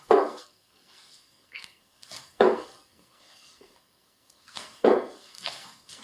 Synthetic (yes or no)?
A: yes